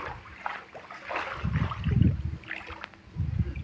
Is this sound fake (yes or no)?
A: no